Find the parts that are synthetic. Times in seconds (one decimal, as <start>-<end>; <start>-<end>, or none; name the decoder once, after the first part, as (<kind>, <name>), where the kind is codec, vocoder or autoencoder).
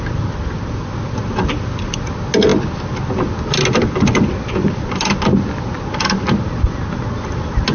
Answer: none